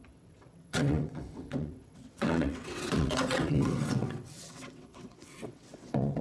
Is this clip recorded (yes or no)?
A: no